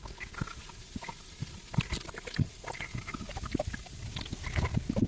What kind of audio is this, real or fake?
real